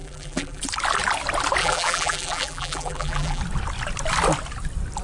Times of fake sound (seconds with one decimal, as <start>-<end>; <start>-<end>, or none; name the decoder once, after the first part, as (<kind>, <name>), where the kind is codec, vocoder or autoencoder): 0.0-0.6 (vocoder, BigVGAN v2); 1.6-3.4